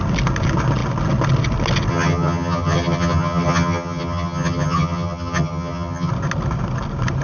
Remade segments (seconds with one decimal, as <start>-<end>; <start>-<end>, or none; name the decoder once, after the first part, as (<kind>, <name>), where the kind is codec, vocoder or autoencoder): 1.9-6.1 (vocoder, HiFi-GAN)